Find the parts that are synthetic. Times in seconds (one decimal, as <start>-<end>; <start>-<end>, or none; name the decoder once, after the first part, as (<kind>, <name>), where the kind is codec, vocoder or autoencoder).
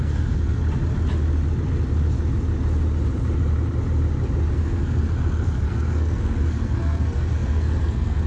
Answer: 0.0-0.6 (codec, SNAC); 4.5-8.3